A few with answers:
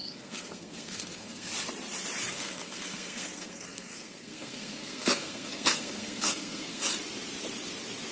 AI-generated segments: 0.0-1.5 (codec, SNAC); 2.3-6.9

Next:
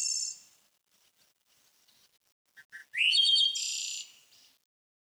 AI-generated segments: 0.0-1.9 (vocoder, BigVGAN v2); 2.8-4.5

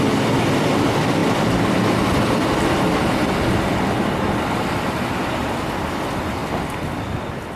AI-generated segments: none

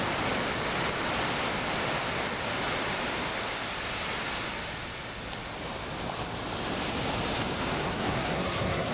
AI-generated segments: 7.8-8.9 (codec, SNAC)

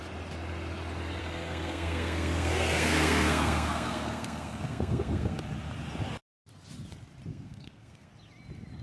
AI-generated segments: 1.2-5.4 (codec, SNAC); 7.3-8.1

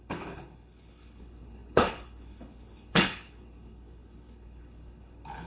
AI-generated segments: 0.0-5.5 (codec, HILCodec)